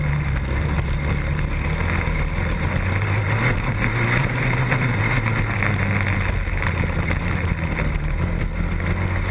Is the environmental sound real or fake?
real